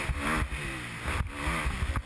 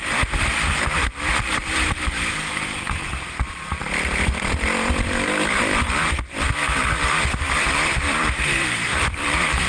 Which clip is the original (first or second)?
first